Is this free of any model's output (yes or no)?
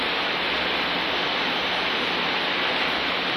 yes